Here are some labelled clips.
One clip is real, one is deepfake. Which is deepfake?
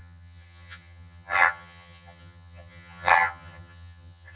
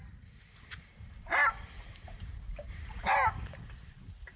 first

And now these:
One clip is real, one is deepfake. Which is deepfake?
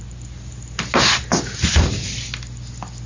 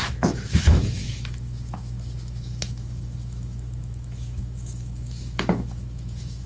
second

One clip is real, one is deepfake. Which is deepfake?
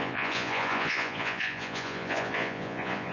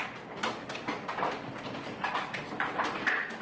first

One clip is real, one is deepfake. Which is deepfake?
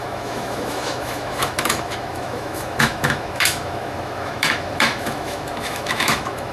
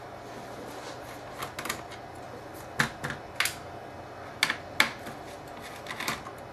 first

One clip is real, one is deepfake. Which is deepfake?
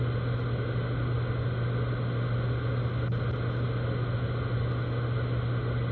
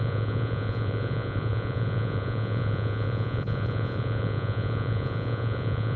second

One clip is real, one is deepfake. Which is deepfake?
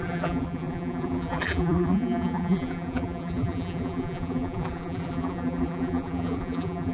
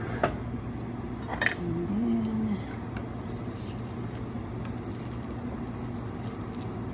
first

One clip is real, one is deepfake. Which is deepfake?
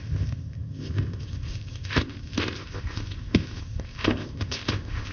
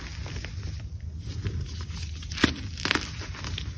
first